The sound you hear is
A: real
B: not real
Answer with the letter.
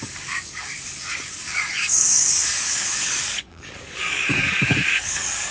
B